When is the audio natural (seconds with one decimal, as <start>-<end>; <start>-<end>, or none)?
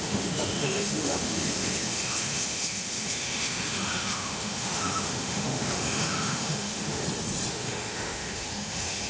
7.0-7.5